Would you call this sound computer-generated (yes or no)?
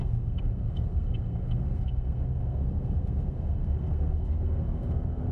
yes